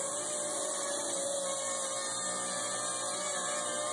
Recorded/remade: recorded